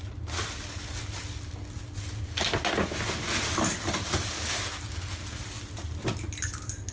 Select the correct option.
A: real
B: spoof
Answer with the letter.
A